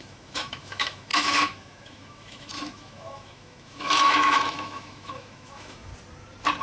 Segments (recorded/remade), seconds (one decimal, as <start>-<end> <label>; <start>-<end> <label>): 0.0-5.9 remade; 5.9-6.6 recorded